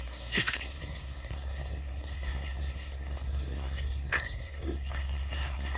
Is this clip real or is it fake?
fake